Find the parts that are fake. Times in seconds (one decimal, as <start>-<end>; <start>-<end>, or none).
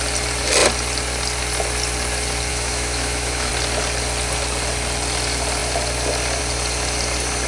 2.5-3.5